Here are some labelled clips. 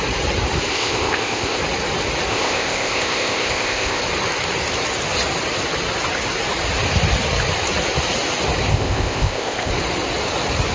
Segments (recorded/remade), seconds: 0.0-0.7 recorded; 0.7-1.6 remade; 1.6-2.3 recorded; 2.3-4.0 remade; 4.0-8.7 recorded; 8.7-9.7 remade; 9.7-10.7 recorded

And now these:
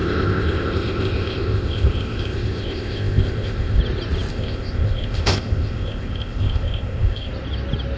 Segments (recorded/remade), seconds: 0.0-3.8 remade; 3.8-4.3 recorded; 4.3-7.3 remade; 7.3-8.0 recorded

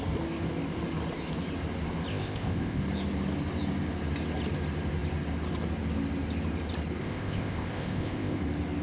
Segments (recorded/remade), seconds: 0.0-2.1 recorded; 2.1-2.8 remade; 2.8-7.0 recorded; 7.0-8.4 remade; 8.4-8.8 recorded

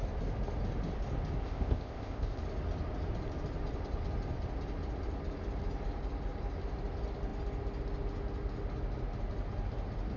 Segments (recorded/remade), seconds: 0.0-1.4 recorded; 1.4-2.4 remade; 2.4-10.2 recorded

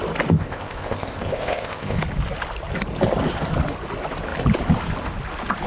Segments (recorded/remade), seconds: 0.0-0.4 recorded; 0.4-2.0 remade; 2.0-5.7 recorded

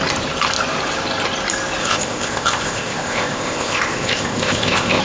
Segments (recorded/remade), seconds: 0.0-1.8 recorded; 1.8-5.0 remade

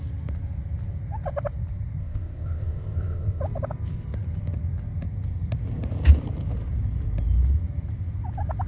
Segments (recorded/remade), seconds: 0.0-2.0 recorded; 2.0-3.4 remade; 3.4-8.7 recorded

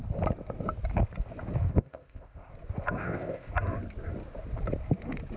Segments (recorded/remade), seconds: 0.0-1.7 recorded; 1.7-2.5 remade; 2.5-3.0 recorded; 3.0-3.5 remade; 3.5-5.4 recorded